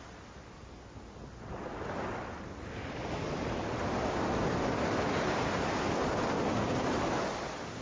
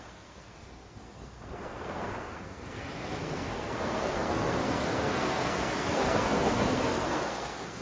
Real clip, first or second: first